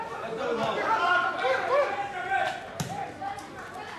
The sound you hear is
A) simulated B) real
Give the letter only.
B